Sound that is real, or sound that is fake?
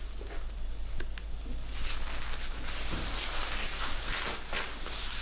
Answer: real